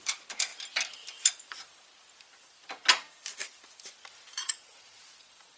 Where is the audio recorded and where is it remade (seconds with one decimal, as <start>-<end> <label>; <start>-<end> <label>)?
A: 0.0-4.4 recorded; 4.4-5.6 remade